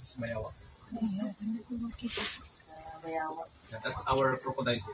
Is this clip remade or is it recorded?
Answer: recorded